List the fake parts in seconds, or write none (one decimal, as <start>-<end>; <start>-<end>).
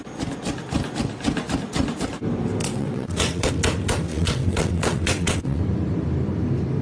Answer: 2.6-3.5; 4.1-5.6